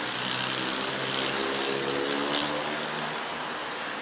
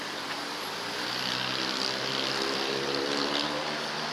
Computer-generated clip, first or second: second